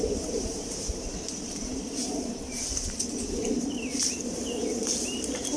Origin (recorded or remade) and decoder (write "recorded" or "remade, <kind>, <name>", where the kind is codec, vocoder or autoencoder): remade, vocoder, BigVGAN v2